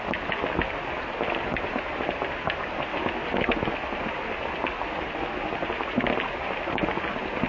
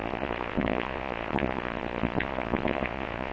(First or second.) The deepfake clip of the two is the second